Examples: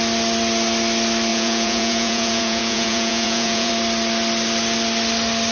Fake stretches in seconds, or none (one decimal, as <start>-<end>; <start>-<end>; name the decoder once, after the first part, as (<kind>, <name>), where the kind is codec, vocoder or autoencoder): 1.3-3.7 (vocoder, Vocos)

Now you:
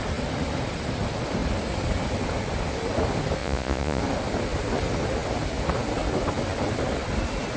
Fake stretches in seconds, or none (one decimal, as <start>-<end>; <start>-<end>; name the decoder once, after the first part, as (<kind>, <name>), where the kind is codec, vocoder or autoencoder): 3.4-4.0 (vocoder, Vocos)

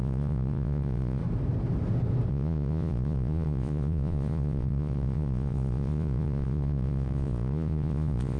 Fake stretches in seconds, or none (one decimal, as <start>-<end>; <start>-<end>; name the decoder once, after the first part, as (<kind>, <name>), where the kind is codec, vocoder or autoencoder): 0.0-1.2 (vocoder, Vocos); 2.3-8.4

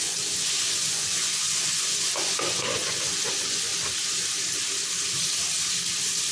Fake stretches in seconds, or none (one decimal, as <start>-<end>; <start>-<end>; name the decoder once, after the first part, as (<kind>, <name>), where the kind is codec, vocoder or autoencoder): 0.0-3.7 (vocoder, Vocos)